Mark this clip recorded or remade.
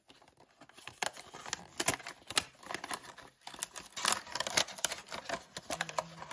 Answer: recorded